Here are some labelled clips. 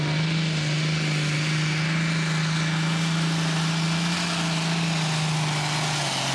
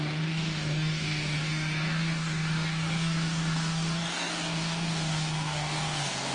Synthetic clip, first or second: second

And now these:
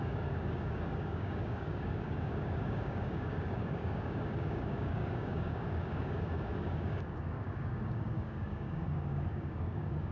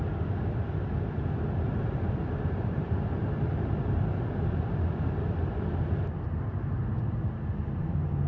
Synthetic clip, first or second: first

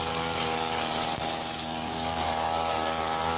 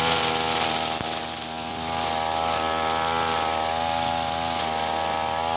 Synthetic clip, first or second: first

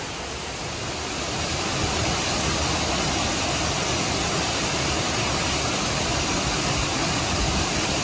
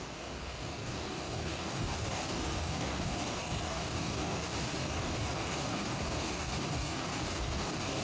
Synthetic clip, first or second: second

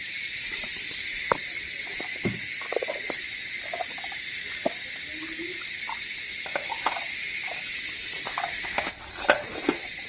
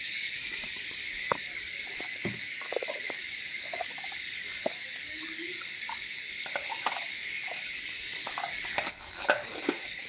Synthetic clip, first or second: second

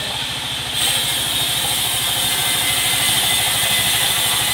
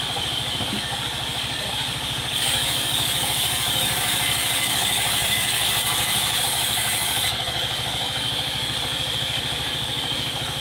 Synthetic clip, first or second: second